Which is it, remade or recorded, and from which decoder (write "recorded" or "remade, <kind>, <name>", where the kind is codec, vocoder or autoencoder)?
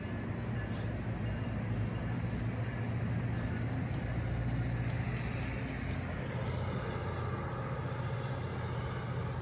recorded